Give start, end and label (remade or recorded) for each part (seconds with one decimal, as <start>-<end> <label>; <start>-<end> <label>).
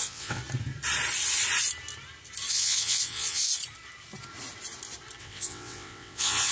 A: 0.0-0.4 remade; 0.4-2.5 recorded; 2.5-3.5 remade; 3.5-5.2 recorded; 5.2-6.5 remade